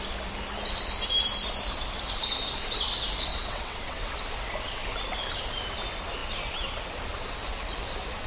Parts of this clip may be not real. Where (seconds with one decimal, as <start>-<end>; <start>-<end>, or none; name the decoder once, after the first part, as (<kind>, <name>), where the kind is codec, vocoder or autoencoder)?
3.3-4.1 (vocoder, WaveNeXt)